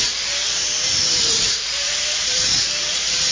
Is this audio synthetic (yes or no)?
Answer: yes